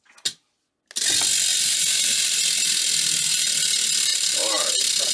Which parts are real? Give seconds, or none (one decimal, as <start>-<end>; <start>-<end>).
0.0-1.5; 2.4-4.1